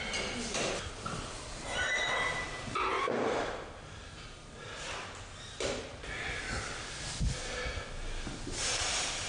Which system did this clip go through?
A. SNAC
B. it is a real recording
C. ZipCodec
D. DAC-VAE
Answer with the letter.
B